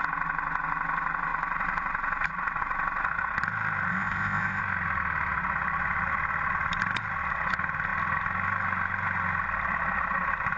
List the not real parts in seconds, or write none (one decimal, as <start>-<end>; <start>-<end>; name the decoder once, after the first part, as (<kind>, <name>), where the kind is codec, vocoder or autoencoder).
3.9-4.6 (codec, ZipCodec)